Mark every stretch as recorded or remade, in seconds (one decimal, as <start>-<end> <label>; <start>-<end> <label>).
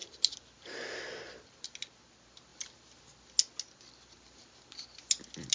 0.0-5.5 recorded